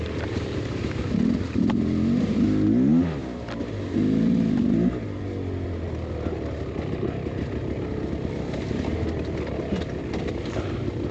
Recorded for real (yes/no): yes